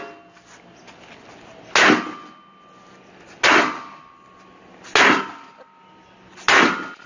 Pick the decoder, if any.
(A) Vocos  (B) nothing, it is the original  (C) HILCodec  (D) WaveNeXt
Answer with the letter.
B